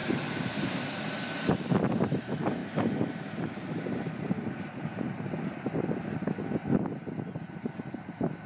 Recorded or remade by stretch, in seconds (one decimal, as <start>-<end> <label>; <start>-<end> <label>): 0.0-8.5 recorded